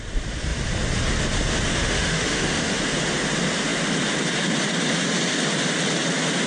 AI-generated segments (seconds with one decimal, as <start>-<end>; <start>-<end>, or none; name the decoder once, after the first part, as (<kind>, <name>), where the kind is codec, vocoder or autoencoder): 1.7-2.8 (autoencoder, DAC-VAE)